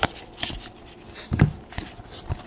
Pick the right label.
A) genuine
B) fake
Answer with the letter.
A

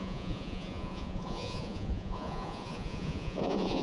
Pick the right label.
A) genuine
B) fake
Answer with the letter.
B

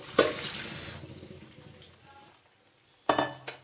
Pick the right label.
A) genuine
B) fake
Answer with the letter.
A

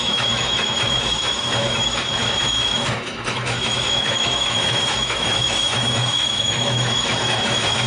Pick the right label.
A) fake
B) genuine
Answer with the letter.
A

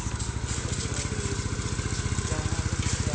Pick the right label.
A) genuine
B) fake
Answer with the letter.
A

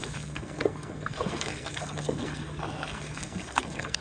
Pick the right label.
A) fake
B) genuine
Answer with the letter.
A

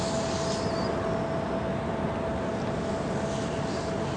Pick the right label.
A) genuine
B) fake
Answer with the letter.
A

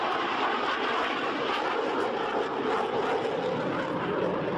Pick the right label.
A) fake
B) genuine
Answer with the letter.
B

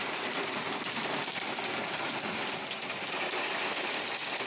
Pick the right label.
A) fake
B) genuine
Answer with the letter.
B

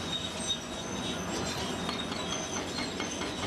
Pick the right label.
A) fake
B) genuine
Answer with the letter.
A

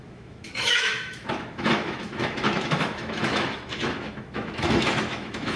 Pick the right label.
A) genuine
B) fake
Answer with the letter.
B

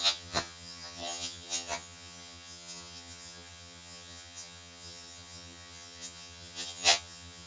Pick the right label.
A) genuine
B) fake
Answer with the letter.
B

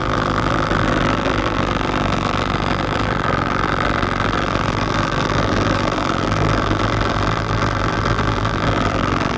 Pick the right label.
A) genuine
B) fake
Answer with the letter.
B